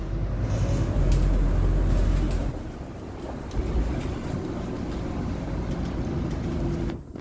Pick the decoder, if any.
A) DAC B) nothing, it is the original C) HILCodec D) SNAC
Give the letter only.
B